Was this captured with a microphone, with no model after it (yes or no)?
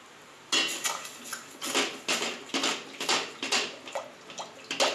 yes